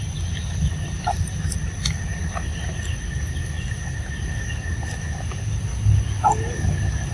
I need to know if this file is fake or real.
real